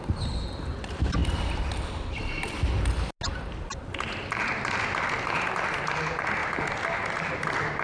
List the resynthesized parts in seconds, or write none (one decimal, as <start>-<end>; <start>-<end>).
none